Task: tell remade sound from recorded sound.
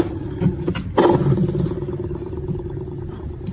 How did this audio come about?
recorded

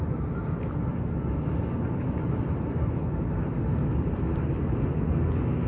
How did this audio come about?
recorded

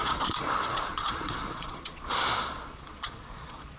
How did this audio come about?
remade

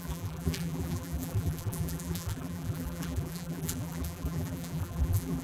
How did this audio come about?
remade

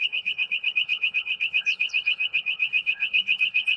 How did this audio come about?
remade